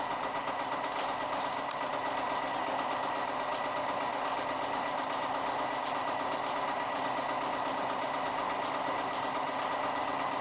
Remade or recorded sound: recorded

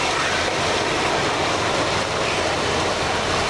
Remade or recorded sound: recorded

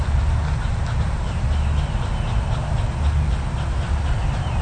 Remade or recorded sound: recorded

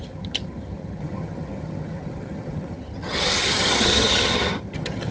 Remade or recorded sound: remade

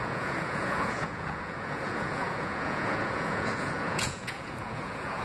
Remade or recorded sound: remade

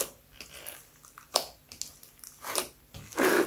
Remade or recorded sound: recorded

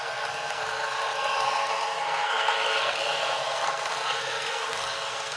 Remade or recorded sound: remade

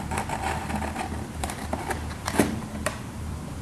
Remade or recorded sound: remade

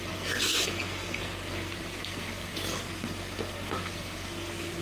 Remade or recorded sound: remade